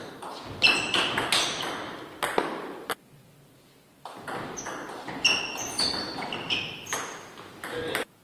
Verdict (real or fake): real